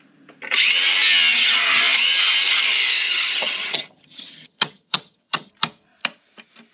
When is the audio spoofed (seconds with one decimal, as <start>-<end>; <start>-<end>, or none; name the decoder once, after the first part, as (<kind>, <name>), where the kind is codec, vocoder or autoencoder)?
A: 1.3-1.8 (vocoder, HiFi-GAN); 2.9-5.5